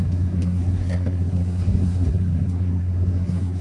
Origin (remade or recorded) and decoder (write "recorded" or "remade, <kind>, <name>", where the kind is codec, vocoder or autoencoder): remade, codec, SNAC